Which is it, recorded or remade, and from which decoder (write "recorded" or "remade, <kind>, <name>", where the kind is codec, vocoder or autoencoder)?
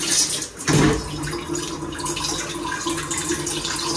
recorded